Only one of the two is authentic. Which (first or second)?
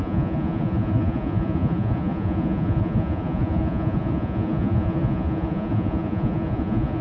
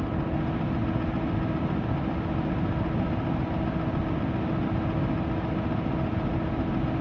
second